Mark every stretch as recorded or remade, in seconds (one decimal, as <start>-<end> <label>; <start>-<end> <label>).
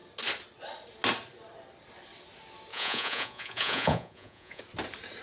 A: 0.0-2.7 recorded; 2.7-4.6 remade; 4.6-5.2 recorded